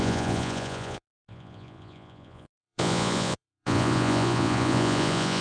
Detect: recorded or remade remade